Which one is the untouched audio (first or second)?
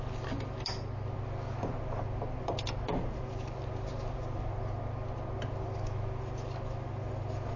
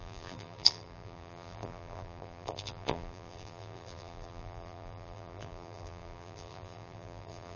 first